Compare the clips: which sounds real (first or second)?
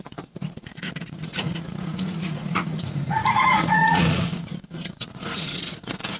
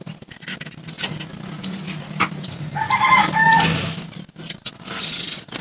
second